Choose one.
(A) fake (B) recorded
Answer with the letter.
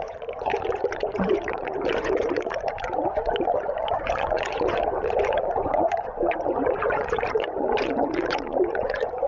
A